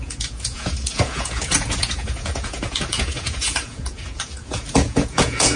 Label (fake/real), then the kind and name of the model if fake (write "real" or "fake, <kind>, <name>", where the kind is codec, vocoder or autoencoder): fake, vocoder, Vocos